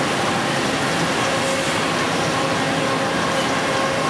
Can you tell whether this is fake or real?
real